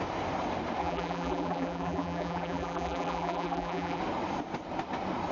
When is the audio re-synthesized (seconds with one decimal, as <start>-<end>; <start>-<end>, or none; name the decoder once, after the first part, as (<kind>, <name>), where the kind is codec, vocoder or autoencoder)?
0.8-4.0 (vocoder, BigVGAN v2)